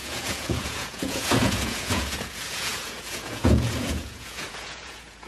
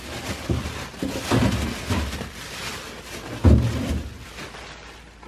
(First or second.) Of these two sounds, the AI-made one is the first